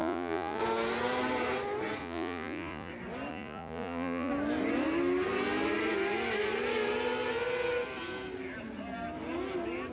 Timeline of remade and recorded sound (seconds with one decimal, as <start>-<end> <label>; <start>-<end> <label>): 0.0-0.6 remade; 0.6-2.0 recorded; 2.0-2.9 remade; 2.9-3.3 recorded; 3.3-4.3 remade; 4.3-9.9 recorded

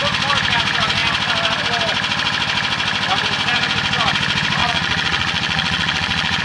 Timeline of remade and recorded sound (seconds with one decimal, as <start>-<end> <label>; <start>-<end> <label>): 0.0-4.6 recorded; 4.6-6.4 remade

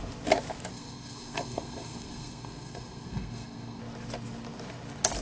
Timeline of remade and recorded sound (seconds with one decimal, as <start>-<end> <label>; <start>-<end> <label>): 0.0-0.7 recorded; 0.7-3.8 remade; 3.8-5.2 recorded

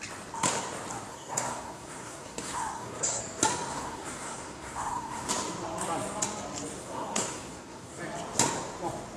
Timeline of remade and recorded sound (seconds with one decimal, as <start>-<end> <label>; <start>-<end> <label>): 0.0-1.1 recorded; 1.1-3.2 remade; 3.2-3.7 recorded; 3.7-5.3 remade; 5.3-6.8 recorded; 6.8-8.0 remade; 8.0-9.2 recorded